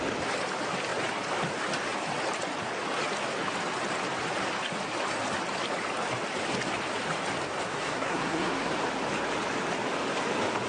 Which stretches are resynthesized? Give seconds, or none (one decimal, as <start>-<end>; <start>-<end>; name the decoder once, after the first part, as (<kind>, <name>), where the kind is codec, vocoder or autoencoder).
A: 7.7-8.7 (codec, SNAC)